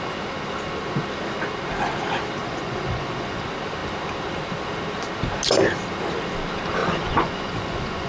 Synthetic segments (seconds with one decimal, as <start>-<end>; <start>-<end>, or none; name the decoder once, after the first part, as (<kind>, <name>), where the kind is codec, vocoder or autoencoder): 2.4-3.4 (vocoder, Vocos); 6.8-8.1